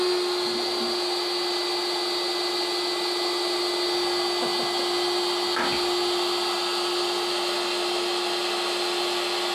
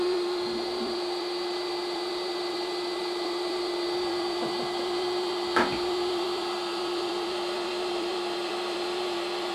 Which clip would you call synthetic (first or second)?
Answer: second